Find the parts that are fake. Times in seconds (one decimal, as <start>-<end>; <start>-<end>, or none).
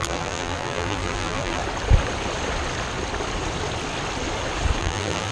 0.0-1.6; 4.8-5.3